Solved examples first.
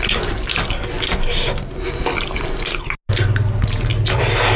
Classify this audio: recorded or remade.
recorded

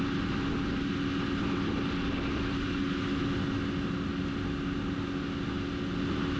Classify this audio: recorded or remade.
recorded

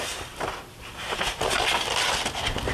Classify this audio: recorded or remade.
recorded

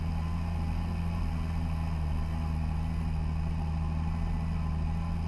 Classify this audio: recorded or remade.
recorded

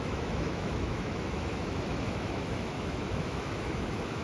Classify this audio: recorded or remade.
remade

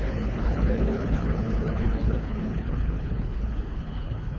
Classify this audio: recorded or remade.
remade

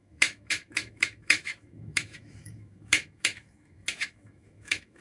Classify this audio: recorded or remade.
remade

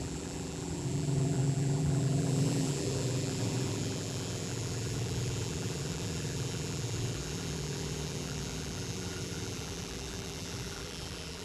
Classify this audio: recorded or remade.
remade